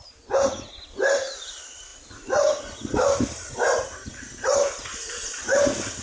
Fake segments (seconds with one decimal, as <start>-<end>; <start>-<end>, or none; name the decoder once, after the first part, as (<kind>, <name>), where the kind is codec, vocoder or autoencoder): none